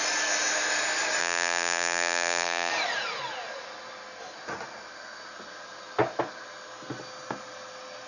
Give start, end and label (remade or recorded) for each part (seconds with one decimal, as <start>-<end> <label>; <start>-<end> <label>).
0.0-1.2 recorded; 1.2-2.7 remade; 2.7-8.1 recorded